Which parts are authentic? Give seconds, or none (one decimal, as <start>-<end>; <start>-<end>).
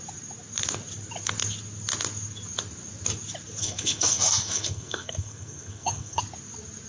0.0-3.6; 6.2-6.9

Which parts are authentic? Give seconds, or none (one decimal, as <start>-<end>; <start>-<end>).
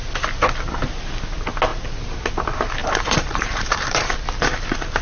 0.0-2.8; 4.1-5.0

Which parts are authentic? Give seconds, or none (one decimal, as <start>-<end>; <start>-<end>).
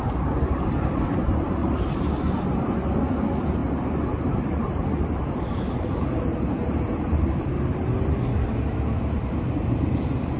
0.0-1.6; 2.1-3.6; 7.6-10.4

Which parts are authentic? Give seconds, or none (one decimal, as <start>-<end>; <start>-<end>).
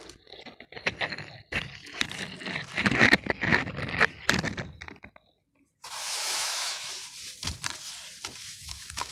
0.0-6.0; 6.9-8.4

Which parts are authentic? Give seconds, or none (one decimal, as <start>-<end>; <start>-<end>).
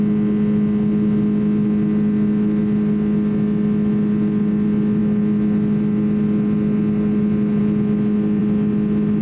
0.0-9.2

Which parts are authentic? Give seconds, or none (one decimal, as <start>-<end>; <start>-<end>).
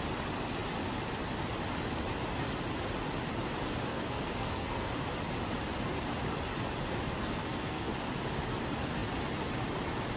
0.0-3.9; 4.9-7.2; 7.9-10.2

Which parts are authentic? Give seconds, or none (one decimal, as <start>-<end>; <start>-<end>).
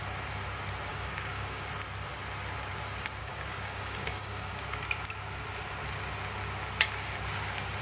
0.0-0.9; 1.7-3.2; 4.5-7.8